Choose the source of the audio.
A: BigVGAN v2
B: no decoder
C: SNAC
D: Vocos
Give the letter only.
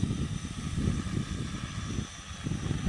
B